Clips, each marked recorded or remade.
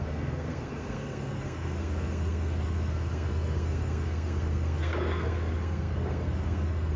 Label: remade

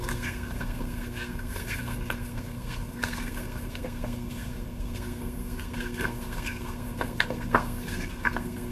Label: remade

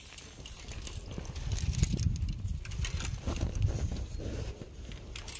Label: recorded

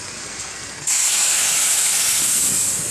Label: remade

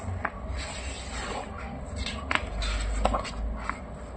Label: recorded